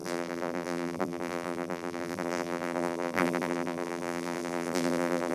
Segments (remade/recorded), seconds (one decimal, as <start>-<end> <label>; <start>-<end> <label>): 0.0-5.3 remade